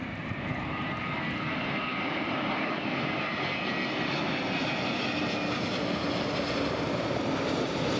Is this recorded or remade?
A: recorded